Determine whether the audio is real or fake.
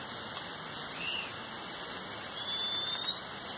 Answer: real